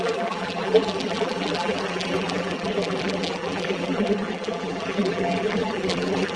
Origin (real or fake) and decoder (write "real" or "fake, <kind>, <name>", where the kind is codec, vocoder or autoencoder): fake, vocoder, BigVGAN v2